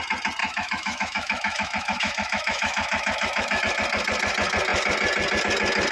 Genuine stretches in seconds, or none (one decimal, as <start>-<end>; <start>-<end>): 0.0-0.4; 3.6-5.9